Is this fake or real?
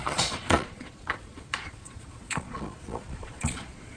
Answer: fake